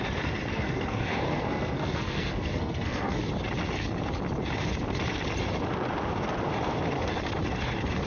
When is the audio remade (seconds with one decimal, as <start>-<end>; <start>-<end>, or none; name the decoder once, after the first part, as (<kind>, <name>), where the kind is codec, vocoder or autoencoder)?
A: 0.5-3.2 (codec, SNAC)